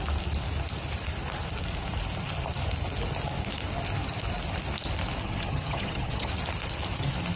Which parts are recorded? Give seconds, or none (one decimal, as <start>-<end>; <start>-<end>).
0.0-5.2; 6.3-7.4